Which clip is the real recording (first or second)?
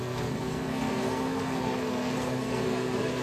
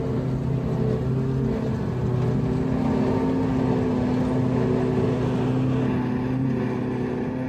second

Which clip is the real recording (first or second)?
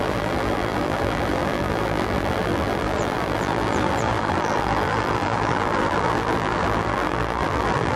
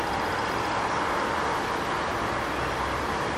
second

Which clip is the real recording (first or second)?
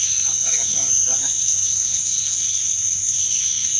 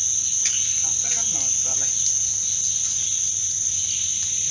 second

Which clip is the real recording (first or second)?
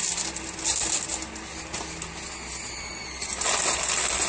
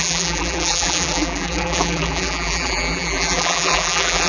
first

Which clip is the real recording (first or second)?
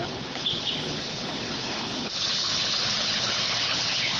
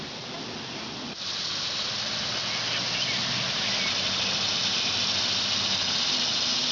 second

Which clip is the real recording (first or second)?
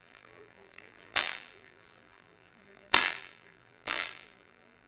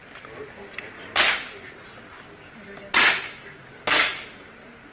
second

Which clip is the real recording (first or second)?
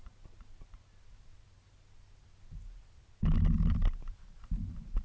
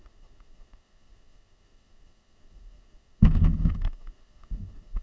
first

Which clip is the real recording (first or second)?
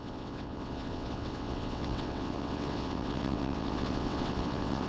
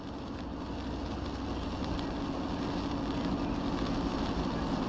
second